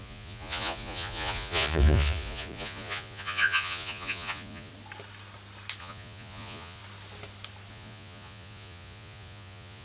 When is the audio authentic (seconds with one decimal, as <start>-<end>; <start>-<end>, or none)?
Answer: 4.7-5.8; 6.8-7.7